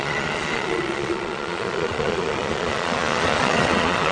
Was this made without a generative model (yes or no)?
no